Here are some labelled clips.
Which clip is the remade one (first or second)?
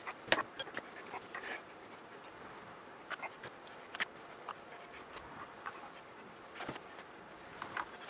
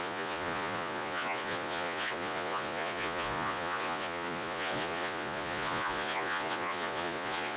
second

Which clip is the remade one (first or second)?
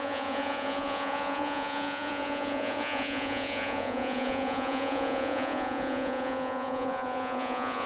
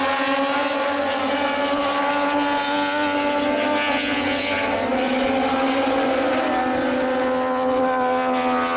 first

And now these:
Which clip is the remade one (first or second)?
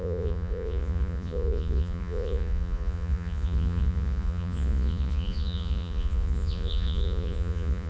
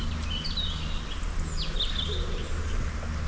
first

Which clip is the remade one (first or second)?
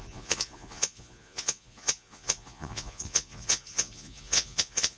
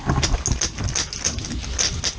first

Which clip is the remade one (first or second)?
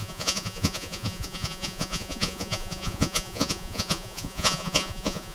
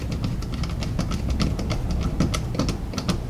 first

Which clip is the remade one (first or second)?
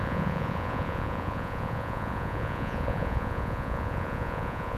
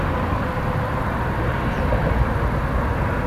first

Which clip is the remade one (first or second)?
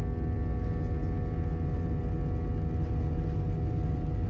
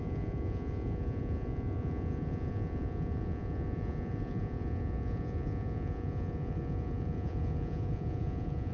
second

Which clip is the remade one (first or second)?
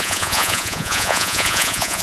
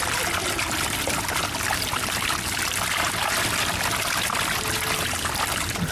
first